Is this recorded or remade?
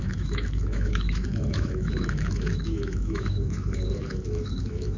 remade